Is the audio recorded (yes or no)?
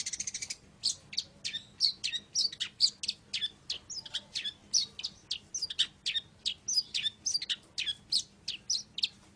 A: yes